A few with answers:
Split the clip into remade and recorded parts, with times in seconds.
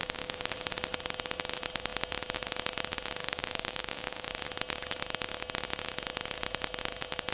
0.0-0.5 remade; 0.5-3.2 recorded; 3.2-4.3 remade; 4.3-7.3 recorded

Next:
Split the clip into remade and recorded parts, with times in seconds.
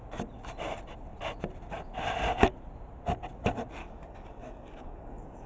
0.0-3.8 recorded; 3.8-5.5 remade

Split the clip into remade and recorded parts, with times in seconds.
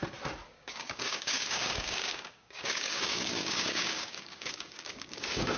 0.0-0.5 recorded; 0.5-5.6 remade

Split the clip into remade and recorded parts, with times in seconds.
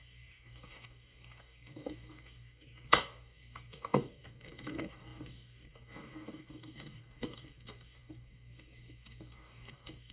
0.0-10.1 remade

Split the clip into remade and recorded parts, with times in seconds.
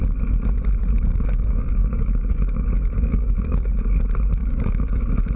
0.0-0.8 recorded; 0.8-4.0 remade; 4.0-4.4 recorded; 4.4-5.0 remade; 5.0-5.4 recorded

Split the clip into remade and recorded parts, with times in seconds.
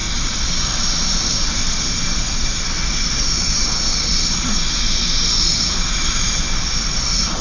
0.0-7.4 recorded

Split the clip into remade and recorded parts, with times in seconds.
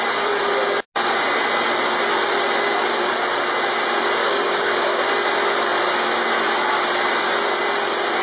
0.0-4.2 recorded; 4.2-5.1 remade; 5.1-8.2 recorded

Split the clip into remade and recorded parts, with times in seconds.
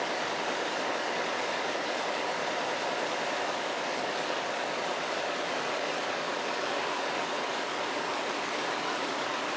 0.0-2.4 remade; 2.4-3.4 recorded; 3.4-9.6 remade